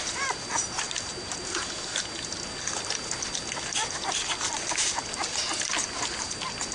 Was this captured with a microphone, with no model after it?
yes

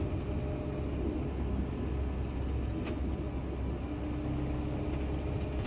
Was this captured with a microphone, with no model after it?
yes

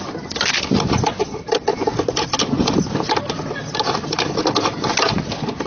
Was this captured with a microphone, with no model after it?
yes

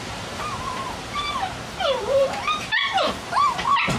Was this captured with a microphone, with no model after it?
no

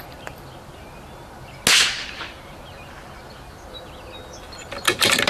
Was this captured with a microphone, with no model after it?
yes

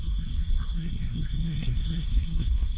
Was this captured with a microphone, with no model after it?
no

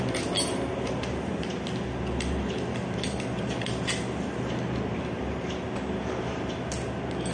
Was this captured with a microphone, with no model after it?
yes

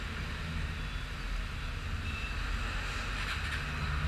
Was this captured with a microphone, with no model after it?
yes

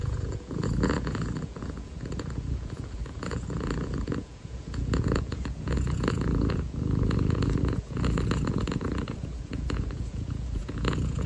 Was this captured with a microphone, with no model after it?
no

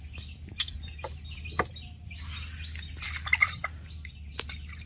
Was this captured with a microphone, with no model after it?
yes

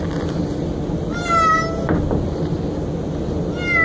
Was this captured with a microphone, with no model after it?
yes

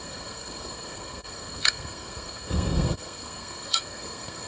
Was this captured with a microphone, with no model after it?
no